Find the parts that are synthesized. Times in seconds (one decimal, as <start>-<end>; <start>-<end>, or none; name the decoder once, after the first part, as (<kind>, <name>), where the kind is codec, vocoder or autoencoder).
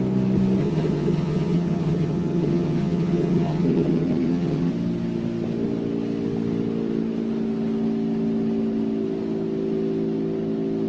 0.6-4.7 (vocoder, HiFi-GAN)